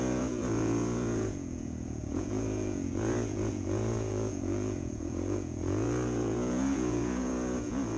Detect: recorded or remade remade